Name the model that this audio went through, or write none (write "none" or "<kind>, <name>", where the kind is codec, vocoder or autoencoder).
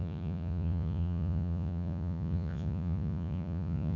vocoder, Vocos